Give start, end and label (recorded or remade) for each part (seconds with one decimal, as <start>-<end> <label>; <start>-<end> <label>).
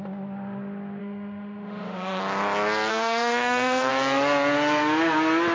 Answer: 0.0-1.0 recorded; 1.0-2.2 remade; 2.2-2.9 recorded; 2.9-3.9 remade; 3.9-5.5 recorded